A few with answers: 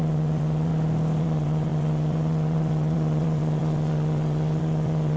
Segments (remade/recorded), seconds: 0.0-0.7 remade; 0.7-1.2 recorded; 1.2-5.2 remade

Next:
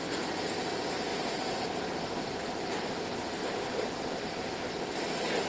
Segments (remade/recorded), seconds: 0.0-3.4 recorded; 3.4-4.2 remade; 4.2-5.5 recorded

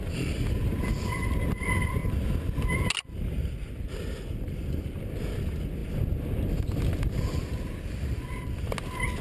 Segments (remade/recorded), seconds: 0.0-9.2 recorded

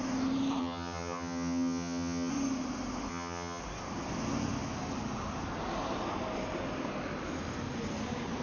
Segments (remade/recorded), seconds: 0.0-0.6 recorded; 0.6-2.3 remade; 2.3-3.1 recorded; 3.1-3.6 remade; 3.6-8.4 recorded

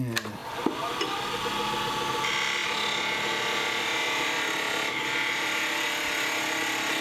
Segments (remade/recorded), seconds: 0.0-7.0 recorded

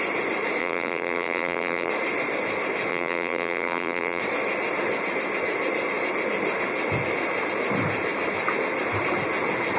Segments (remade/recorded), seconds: 0.0-0.6 recorded; 0.6-1.9 remade; 1.9-2.9 recorded; 2.9-4.2 remade; 4.2-9.8 recorded

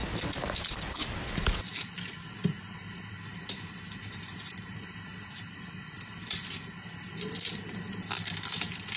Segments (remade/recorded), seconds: 0.0-9.0 recorded